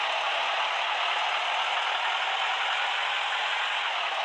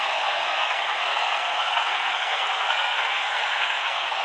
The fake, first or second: second